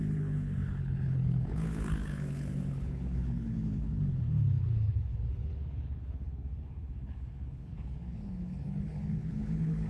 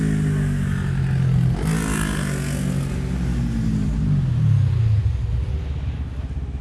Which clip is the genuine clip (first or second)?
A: second